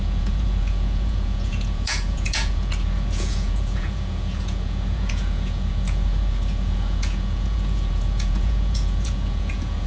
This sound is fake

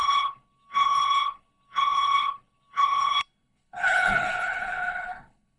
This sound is fake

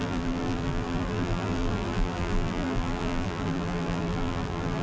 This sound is fake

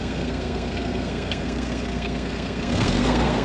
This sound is fake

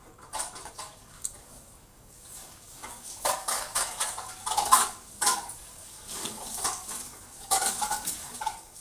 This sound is fake